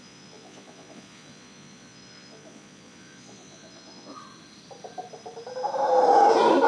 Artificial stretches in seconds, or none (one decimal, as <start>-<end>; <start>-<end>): 0.0-4.1